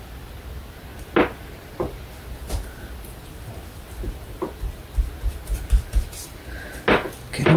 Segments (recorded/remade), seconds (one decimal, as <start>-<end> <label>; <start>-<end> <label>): 0.0-2.4 recorded; 2.4-6.2 remade; 6.2-7.6 recorded